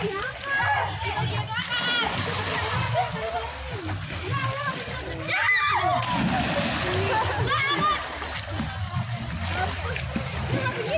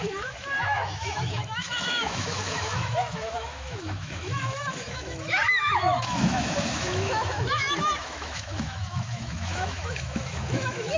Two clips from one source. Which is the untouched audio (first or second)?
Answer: first